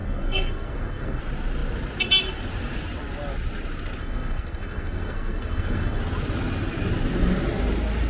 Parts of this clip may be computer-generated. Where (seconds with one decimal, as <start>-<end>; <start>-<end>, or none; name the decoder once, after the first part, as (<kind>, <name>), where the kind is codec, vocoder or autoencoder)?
0.0-1.2 (codec, SNAC); 4.0-6.0